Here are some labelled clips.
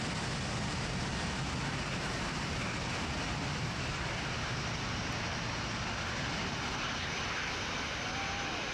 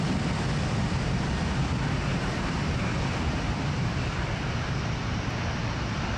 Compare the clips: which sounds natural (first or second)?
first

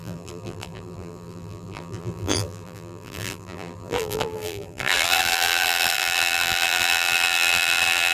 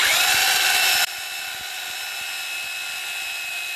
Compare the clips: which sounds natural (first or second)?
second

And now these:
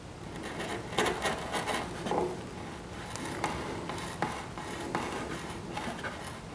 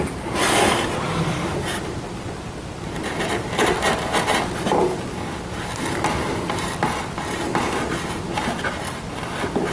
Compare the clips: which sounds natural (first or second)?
first